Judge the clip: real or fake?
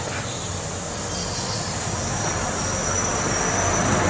real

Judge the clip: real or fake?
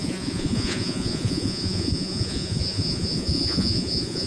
fake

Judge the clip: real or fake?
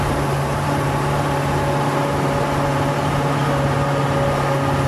real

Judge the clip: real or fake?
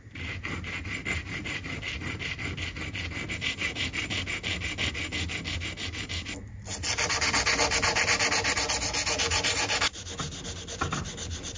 real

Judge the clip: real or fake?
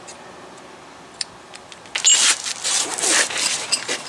real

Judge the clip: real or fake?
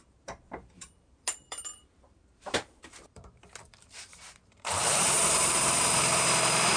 fake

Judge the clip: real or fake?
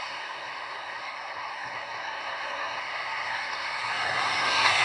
fake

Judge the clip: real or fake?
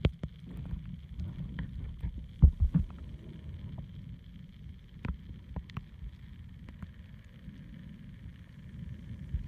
real